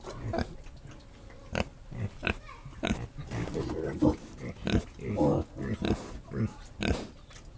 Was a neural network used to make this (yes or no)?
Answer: no